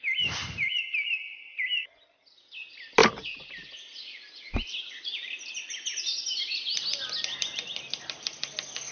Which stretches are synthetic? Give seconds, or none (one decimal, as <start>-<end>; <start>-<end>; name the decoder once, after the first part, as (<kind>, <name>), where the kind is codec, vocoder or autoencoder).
0.4-1.6 (vocoder, BigVGAN v2); 3.0-3.9